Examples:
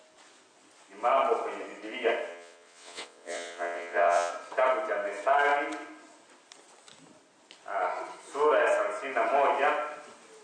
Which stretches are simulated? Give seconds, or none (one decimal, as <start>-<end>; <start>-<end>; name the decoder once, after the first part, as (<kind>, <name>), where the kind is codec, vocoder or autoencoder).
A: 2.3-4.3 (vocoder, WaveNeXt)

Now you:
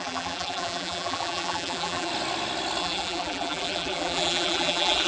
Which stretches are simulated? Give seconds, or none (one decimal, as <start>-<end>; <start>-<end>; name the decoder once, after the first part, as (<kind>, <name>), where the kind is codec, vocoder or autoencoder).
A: 0.0-2.1 (vocoder, BigVGAN v2); 2.8-5.1

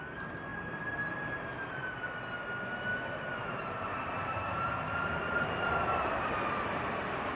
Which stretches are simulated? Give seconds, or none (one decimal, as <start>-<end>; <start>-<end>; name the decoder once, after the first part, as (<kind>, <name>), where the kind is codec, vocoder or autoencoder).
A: 0.5-1.9 (vocoder, BigVGAN v2); 2.9-7.3

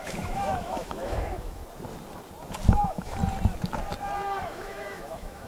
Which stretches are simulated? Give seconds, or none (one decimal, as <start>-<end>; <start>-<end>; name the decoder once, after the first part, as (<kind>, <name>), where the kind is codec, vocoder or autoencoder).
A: 0.0-1.6 (autoencoder, DAC-VAE); 2.7-3.2; 4.4-5.5